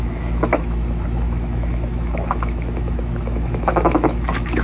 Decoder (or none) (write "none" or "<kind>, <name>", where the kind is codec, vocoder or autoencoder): autoencoder, DAC-VAE